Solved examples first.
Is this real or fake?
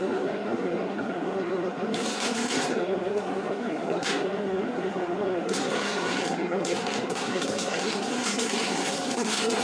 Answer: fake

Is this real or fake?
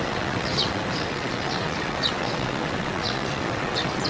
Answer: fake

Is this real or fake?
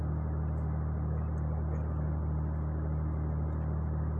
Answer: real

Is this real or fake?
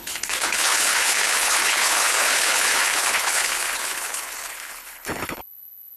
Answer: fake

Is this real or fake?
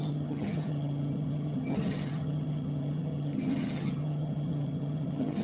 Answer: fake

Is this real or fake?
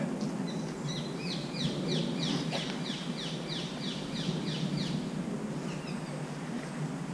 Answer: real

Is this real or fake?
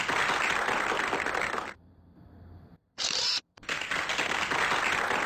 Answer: real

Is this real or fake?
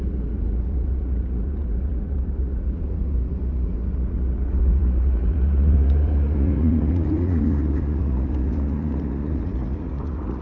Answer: fake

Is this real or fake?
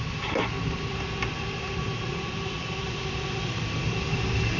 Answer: real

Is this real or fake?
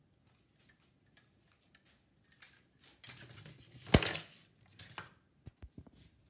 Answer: real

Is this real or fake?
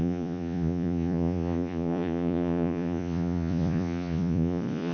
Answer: fake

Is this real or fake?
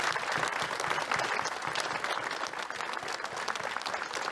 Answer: real